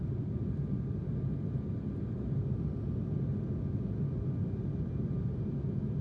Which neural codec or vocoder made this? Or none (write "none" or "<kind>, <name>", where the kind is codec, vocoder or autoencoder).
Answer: none